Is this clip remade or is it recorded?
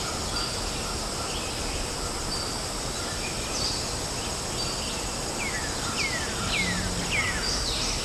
recorded